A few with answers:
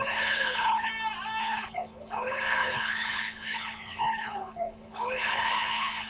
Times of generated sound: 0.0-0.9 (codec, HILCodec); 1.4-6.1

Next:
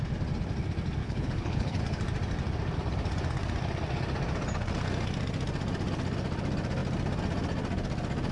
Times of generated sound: 1.0-1.8 (codec, HILCodec)